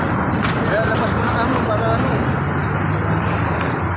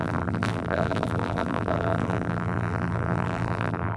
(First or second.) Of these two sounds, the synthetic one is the second